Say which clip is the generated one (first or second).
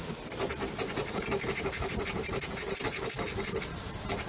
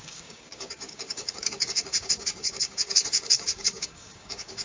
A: second